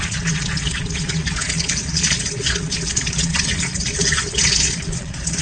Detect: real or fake fake